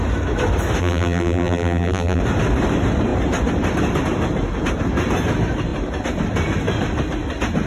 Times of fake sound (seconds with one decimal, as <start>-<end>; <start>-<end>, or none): 0.8-2.2